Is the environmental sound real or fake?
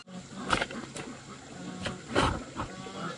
real